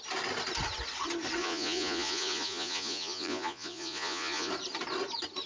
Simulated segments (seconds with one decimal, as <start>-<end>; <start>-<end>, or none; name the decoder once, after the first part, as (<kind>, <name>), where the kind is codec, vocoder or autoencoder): 1.4-4.5 (vocoder, Vocos)